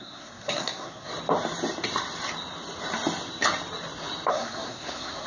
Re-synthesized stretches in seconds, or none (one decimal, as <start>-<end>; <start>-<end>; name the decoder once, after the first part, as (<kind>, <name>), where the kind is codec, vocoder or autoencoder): 0.0-1.1 (codec, SNAC); 4.3-5.3